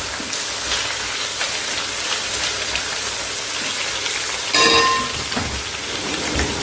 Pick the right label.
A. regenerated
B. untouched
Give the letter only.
B